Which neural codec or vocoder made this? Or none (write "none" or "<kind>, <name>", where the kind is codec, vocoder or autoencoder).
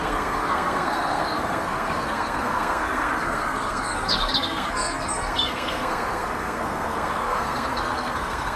codec, SNAC